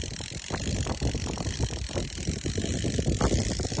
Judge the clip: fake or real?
real